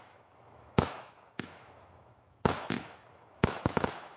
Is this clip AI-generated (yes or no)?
yes